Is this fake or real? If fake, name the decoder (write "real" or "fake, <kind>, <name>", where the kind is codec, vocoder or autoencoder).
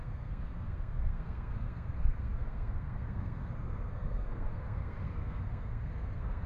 fake, codec, SNAC